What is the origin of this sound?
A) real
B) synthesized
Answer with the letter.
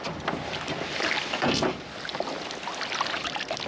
A